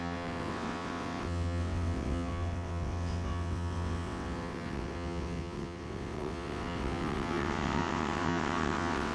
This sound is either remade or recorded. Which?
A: remade